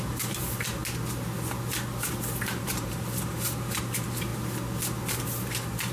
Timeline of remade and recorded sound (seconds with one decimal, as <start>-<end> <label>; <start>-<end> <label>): 0.0-0.8 remade; 0.8-2.6 recorded; 2.6-4.3 remade; 4.3-5.2 recorded; 5.2-5.9 remade